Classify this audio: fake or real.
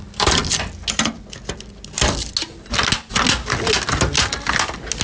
real